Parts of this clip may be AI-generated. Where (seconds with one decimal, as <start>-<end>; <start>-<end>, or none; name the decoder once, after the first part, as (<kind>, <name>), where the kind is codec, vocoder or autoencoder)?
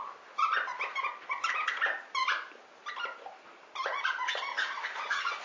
4.5-5.4 (vocoder, Vocos)